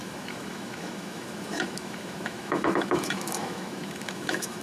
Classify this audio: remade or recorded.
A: remade